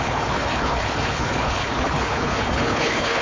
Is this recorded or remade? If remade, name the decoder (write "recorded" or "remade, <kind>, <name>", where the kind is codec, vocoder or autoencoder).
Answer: remade, codec, HILCodec